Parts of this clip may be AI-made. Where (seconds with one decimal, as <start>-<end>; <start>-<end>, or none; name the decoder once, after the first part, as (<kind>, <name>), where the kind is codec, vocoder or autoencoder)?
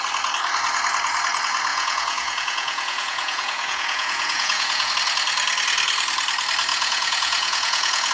1.7-4.9 (vocoder, Vocos); 6.7-8.1